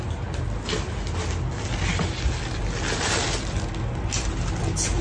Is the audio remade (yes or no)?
no